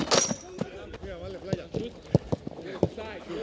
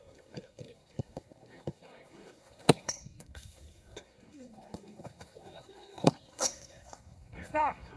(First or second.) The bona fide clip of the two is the first